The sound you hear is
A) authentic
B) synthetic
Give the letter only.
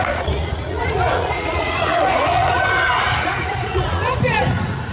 B